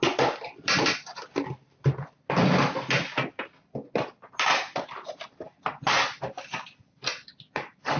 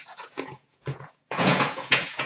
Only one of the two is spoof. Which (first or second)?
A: second